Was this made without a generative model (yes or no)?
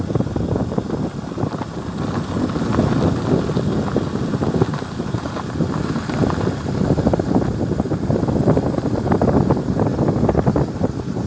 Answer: yes